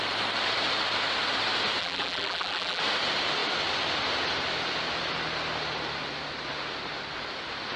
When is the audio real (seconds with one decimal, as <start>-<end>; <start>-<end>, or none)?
0.0-1.8; 2.8-7.8